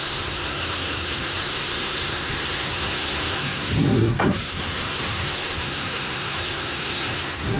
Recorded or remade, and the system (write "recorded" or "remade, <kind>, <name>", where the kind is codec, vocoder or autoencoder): remade, codec, SNAC